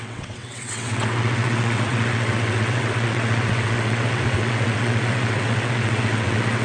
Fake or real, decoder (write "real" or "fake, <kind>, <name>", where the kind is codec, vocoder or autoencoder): fake, vocoder, WaveNeXt